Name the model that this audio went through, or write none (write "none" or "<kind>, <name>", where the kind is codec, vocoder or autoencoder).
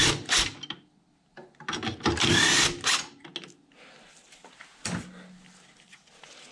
none